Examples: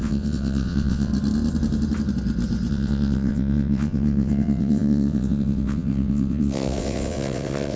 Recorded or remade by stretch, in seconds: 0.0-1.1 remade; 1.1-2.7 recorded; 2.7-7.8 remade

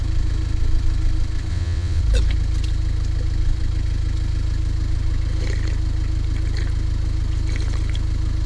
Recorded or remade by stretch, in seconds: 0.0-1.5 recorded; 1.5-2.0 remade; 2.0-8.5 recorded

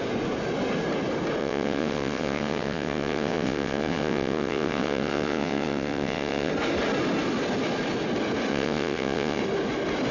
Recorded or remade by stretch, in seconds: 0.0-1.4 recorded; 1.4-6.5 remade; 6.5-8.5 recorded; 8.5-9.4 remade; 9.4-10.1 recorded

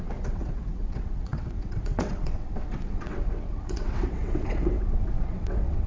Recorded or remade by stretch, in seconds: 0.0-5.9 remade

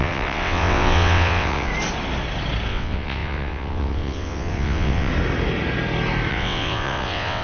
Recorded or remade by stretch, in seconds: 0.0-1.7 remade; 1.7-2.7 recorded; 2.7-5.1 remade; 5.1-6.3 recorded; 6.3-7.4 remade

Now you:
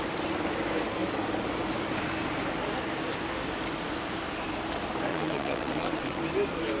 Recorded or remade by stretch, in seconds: 0.0-5.1 recorded; 5.1-6.2 remade; 6.2-6.8 recorded